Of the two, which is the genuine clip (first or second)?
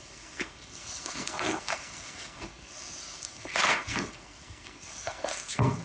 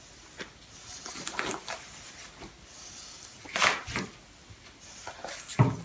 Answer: second